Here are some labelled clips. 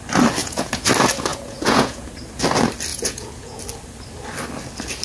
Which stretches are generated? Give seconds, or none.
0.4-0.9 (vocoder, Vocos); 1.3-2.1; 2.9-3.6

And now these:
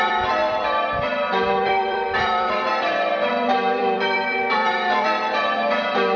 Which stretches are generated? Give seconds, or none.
0.0-6.2 (vocoder, BigVGAN v2)

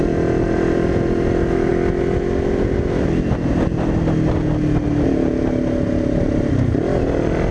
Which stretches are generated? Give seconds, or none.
none

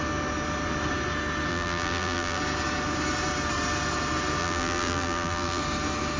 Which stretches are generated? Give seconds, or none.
1.5-2.4 (vocoder, BigVGAN v2); 4.4-5.6

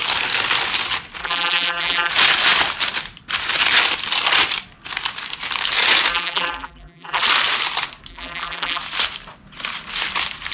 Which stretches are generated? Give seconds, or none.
1.2-2.1 (vocoder, BigVGAN v2); 6.1-7.2; 8.1-8.8

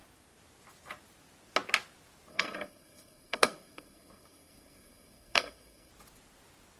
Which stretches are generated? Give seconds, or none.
2.3-5.9 (codec, SNAC)